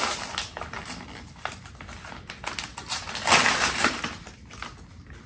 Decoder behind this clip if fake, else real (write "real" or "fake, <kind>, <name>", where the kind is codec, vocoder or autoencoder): real